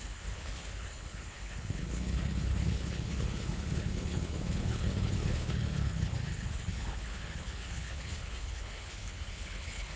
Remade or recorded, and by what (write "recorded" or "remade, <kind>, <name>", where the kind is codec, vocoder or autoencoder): remade, codec, HILCodec